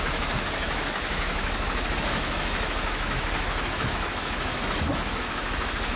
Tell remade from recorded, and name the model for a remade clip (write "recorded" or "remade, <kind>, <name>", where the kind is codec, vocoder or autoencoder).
remade, autoencoder, DAC-VAE